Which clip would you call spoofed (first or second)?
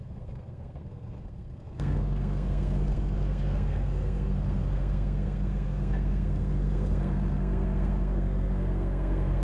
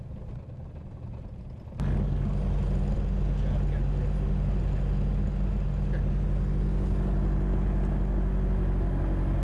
first